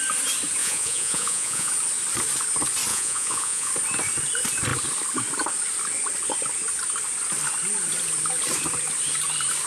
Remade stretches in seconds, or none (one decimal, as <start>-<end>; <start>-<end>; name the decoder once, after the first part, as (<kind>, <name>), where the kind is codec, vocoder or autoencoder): 0.6-1.7 (vocoder, Vocos); 2.9-3.7